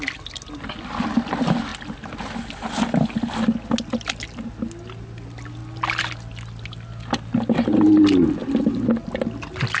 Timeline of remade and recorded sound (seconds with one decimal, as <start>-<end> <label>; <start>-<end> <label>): 0.0-9.8 recorded